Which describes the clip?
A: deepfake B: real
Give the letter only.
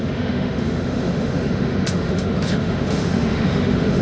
A